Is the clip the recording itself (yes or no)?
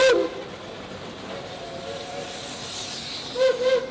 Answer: yes